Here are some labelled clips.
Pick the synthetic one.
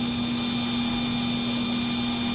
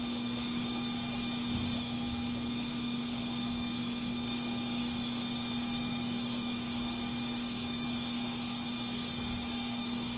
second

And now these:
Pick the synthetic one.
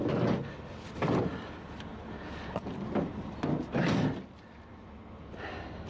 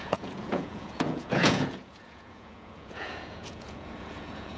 second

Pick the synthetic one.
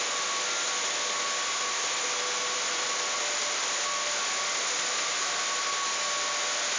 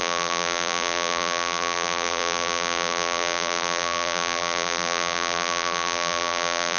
second